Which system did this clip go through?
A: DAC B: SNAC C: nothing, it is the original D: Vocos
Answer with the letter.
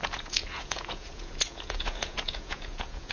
D